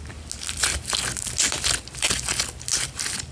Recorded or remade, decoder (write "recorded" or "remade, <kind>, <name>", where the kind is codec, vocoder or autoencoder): recorded